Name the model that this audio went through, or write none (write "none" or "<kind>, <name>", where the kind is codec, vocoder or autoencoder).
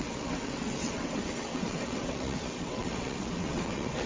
vocoder, WaveNeXt